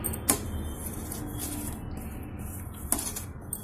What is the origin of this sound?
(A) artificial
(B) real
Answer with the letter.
B